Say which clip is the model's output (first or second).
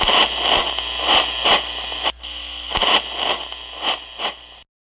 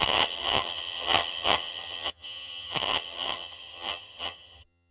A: second